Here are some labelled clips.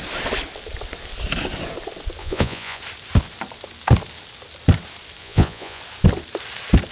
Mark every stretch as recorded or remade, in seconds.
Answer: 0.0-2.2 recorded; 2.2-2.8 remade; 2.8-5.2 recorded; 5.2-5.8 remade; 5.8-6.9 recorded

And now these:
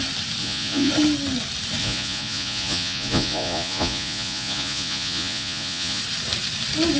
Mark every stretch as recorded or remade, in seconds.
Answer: 0.0-0.4 recorded; 0.4-0.9 remade; 0.9-1.8 recorded; 1.8-6.0 remade; 6.0-7.0 recorded

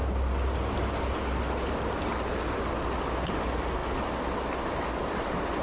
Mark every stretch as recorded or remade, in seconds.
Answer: 0.0-5.6 recorded

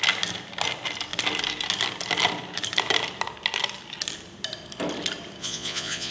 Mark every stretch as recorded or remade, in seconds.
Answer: 0.0-5.4 recorded; 5.4-6.1 remade

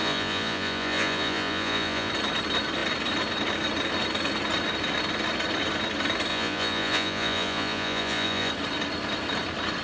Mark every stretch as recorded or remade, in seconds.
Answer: 0.0-2.1 remade; 2.1-6.3 recorded; 6.3-8.5 remade; 8.5-9.8 recorded